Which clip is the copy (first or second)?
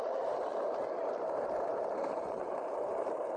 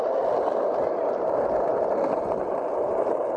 first